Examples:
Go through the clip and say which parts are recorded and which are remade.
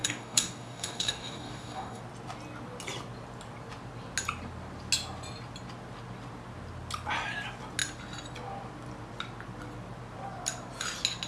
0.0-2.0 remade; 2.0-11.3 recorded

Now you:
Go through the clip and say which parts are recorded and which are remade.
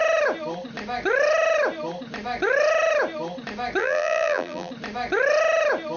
0.0-3.8 recorded; 3.8-4.7 remade; 4.7-6.0 recorded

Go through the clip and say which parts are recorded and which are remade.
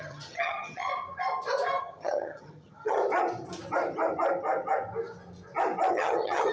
0.0-0.9 remade; 0.9-1.8 recorded; 1.8-3.0 remade; 3.0-5.9 recorded; 5.9-6.5 remade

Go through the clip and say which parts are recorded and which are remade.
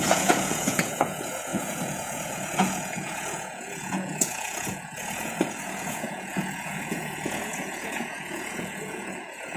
0.0-9.6 remade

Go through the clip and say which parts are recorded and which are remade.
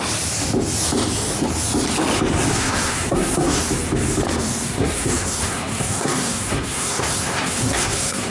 0.0-2.5 recorded; 2.5-3.6 remade; 3.6-4.6 recorded; 4.6-8.3 remade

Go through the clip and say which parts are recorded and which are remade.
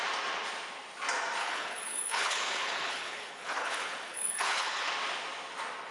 0.0-1.4 recorded; 1.4-4.9 remade; 4.9-5.9 recorded